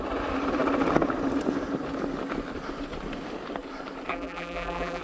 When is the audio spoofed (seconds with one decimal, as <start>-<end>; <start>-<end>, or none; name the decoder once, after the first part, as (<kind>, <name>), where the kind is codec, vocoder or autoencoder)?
4.1-5.0 (vocoder, BigVGAN v2)